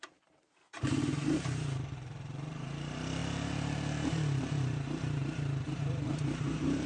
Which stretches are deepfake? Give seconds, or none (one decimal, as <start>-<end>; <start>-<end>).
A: 0.0-6.9

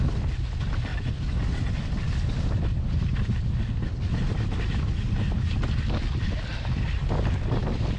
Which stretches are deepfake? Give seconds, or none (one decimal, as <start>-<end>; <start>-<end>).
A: none